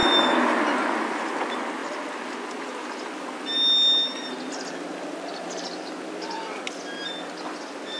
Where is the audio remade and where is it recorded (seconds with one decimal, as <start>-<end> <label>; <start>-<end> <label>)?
0.0-8.0 recorded